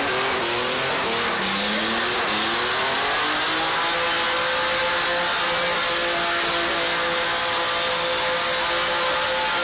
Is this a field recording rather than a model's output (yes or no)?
yes